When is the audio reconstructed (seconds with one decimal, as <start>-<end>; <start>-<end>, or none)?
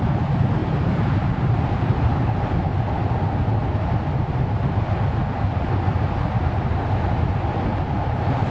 0.6-2.1; 7.7-8.5